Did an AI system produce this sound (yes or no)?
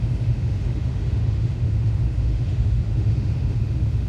yes